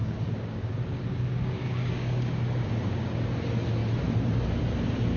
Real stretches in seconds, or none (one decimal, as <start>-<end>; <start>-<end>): 3.1-5.2